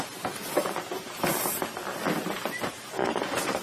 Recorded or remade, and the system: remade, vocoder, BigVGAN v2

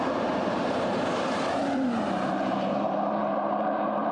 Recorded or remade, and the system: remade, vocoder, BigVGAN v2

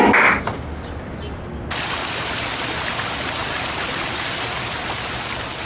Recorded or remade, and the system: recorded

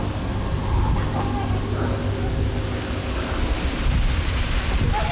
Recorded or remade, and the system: recorded